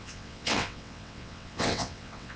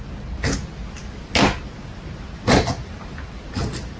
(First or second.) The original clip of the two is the second